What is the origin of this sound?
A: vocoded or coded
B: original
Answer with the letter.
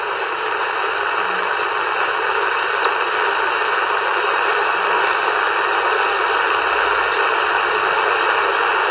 B